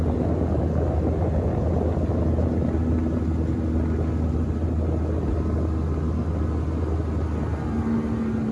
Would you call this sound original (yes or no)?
yes